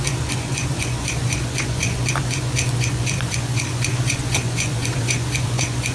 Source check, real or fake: fake